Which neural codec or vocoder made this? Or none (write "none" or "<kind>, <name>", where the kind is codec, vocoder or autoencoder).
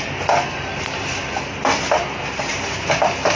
none